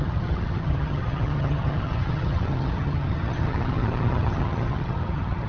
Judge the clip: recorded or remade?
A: remade